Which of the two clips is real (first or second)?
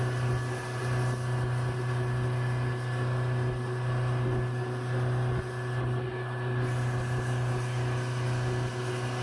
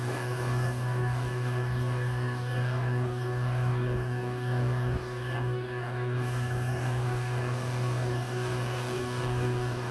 first